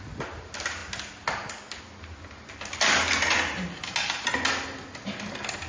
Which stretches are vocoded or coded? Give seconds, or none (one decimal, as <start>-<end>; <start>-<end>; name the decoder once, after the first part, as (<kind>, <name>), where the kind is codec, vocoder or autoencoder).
none